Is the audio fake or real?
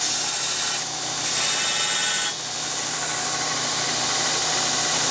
real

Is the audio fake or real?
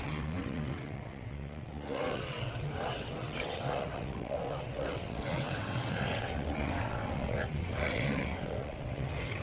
fake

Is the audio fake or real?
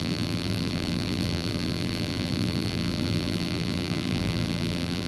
fake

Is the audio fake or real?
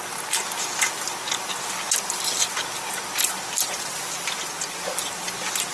real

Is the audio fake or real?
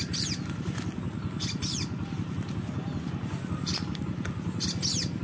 real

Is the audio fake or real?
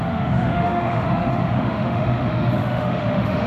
fake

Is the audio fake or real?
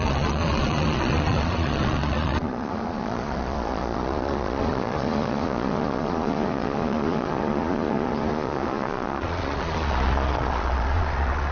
fake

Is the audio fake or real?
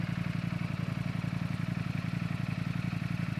real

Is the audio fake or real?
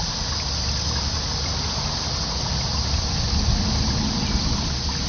real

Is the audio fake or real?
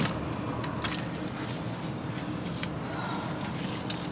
real